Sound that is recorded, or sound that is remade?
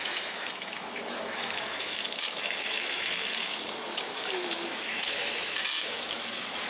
remade